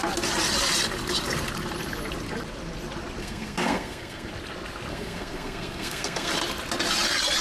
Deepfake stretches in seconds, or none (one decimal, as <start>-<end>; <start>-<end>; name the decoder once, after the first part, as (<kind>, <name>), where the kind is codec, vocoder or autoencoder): 3.2-4.3 (codec, SNAC); 4.9-6.3